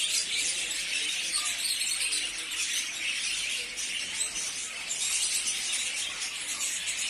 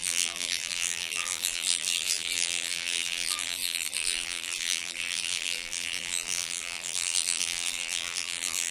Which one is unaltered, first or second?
first